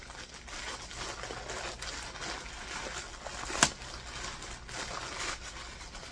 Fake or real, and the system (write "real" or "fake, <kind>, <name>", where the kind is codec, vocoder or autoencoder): real